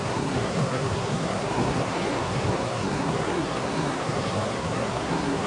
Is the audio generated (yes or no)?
yes